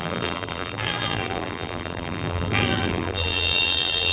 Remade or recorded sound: remade